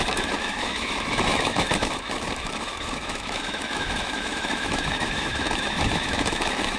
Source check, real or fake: fake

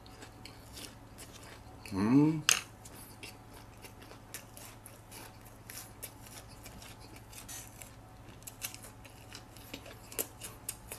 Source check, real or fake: real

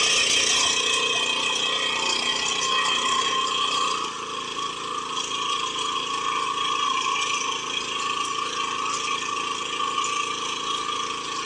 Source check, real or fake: real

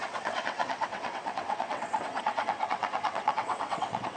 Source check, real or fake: fake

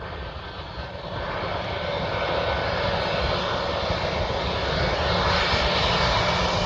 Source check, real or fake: real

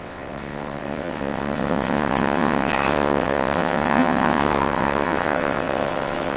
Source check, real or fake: fake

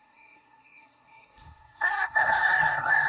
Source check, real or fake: fake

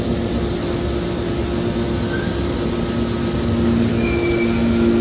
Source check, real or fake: real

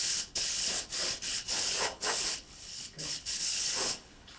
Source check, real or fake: fake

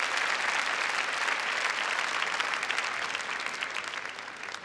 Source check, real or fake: real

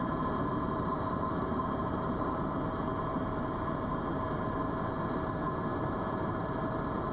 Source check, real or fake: fake